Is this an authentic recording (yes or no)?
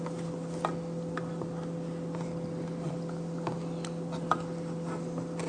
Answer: yes